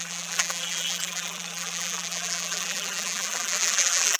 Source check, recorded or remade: remade